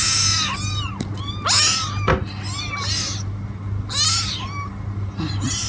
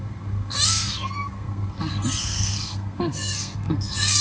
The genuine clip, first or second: first